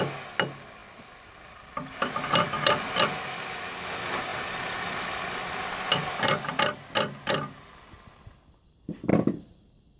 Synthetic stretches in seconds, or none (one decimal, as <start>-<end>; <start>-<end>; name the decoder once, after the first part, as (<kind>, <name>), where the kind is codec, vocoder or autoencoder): none